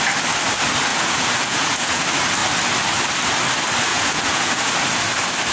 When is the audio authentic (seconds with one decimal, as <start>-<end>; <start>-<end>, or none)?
0.0-0.9; 2.0-3.9; 4.7-5.5